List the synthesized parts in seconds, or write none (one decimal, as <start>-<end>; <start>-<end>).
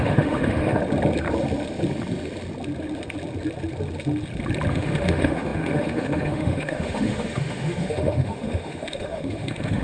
0.0-0.8; 4.7-9.8